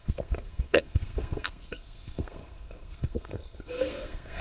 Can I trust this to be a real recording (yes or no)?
no